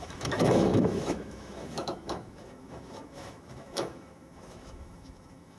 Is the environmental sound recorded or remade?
remade